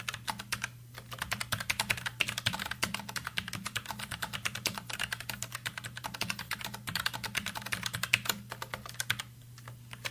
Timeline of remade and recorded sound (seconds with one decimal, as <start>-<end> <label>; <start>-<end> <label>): 0.0-3.3 recorded; 3.3-5.3 remade; 5.3-10.1 recorded